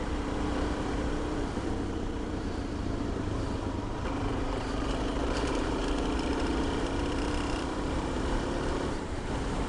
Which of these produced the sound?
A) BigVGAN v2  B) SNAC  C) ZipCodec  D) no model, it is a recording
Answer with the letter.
A